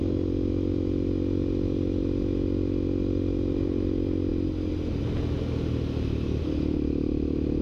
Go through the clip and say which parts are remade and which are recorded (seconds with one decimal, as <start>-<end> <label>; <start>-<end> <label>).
0.0-7.6 recorded

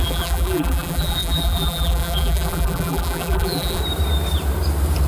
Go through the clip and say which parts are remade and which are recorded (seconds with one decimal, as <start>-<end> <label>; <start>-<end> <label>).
0.0-3.8 remade; 3.8-5.1 recorded

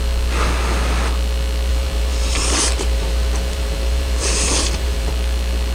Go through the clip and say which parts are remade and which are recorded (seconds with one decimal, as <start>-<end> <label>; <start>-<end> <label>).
0.0-1.7 recorded; 1.7-5.1 remade; 5.1-5.7 recorded